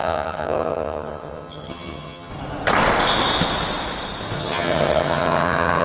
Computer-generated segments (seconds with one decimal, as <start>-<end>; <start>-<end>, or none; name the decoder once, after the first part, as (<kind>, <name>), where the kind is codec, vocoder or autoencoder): 0.0-2.3 (vocoder, HiFi-GAN); 4.4-5.8

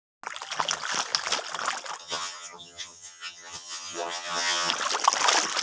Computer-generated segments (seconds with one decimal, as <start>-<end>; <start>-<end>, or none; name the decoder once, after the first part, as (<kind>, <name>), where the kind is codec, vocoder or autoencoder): 2.0-4.7 (vocoder, HiFi-GAN)

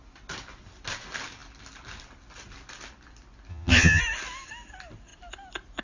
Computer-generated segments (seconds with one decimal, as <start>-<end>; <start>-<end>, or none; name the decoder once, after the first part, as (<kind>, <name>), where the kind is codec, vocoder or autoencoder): 3.5-4.0 (vocoder, HiFi-GAN)

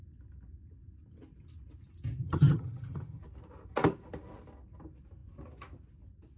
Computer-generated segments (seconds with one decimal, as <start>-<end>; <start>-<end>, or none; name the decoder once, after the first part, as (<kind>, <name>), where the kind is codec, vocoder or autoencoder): 2.2-3.2 (vocoder, HiFi-GAN)